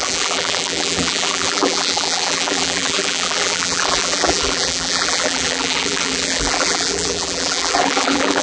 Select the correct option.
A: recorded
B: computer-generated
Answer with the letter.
B